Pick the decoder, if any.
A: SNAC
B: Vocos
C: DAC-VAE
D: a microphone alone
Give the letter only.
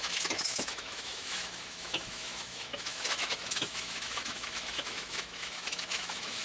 C